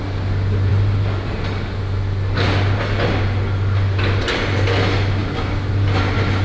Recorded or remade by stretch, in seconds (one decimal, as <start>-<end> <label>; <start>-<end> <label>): 0.0-6.4 recorded